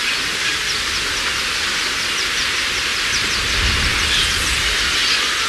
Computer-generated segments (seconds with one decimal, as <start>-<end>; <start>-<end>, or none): none